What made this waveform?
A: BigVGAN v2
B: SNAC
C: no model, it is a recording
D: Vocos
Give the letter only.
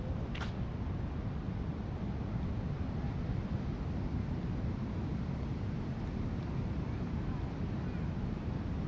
C